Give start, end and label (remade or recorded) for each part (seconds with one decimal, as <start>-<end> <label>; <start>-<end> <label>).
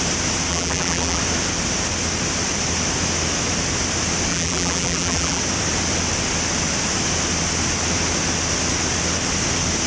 0.0-0.5 recorded; 0.5-1.2 remade; 1.2-4.3 recorded; 4.3-5.4 remade; 5.4-9.9 recorded